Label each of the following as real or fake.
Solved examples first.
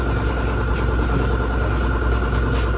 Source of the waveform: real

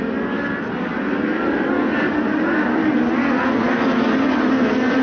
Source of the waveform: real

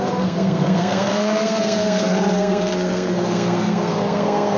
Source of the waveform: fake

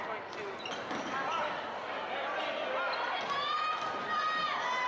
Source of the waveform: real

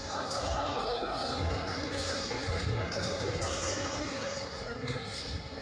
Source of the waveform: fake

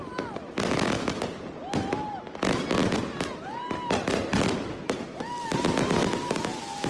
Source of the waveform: real